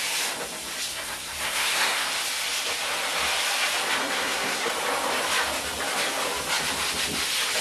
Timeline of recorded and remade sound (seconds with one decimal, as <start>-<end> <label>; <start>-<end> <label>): 0.0-0.9 recorded; 0.9-2.1 remade; 2.1-4.0 recorded; 4.0-4.7 remade; 4.7-7.6 recorded